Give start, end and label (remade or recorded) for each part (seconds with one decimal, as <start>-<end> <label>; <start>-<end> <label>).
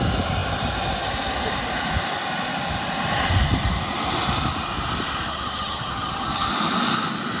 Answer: 0.0-5.3 recorded; 5.3-6.5 remade; 6.5-7.4 recorded